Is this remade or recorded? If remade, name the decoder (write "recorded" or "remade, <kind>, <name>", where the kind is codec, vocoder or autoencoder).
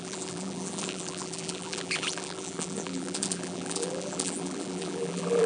remade, vocoder, BigVGAN v2